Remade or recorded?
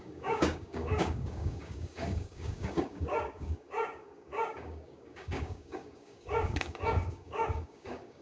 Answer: remade